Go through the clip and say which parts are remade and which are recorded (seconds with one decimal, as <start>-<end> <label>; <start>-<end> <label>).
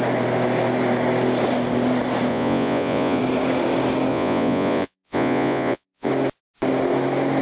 0.0-2.3 recorded; 2.3-3.2 remade; 3.2-4.1 recorded; 4.1-6.1 remade; 6.1-7.4 recorded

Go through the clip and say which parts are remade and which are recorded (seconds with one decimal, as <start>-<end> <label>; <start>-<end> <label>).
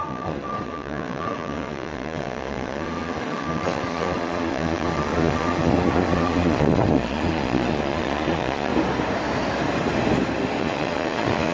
0.0-8.7 remade; 8.7-10.6 recorded; 10.6-11.5 remade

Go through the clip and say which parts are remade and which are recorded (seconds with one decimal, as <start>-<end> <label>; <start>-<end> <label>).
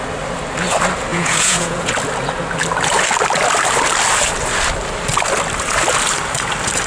0.0-1.1 recorded; 1.1-1.9 remade; 1.9-6.9 recorded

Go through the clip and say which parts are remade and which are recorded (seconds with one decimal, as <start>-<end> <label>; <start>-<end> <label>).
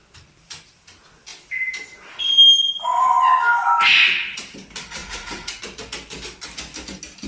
0.0-5.0 recorded; 5.0-5.6 remade; 5.6-7.3 recorded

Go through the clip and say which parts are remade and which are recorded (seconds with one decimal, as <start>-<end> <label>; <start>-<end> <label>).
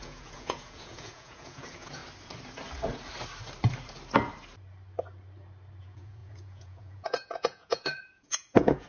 0.0-2.0 remade; 2.0-5.8 recorded; 5.8-8.9 remade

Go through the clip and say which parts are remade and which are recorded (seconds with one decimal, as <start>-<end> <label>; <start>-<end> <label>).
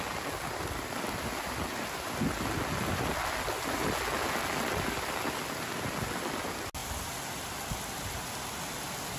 0.0-9.2 recorded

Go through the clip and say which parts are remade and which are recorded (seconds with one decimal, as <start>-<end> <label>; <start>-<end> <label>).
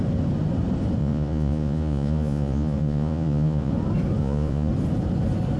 0.0-1.0 recorded; 1.0-3.7 remade; 3.7-4.2 recorded; 4.2-4.7 remade; 4.7-5.6 recorded